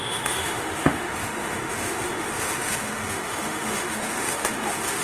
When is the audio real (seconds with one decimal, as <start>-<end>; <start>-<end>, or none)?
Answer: none